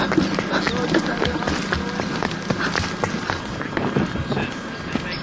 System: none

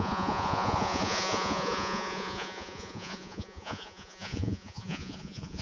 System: vocoder, Vocos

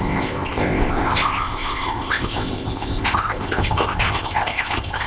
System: codec, ZipCodec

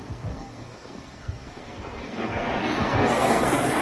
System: codec, SNAC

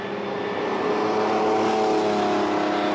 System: none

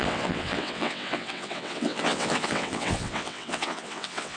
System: vocoder, WaveNeXt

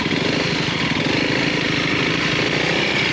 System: none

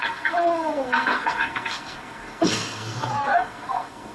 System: codec, SNAC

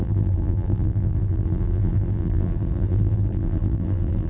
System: vocoder, BigVGAN v2